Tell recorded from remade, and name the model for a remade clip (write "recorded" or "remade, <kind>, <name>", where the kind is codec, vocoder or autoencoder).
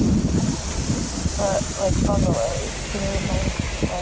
recorded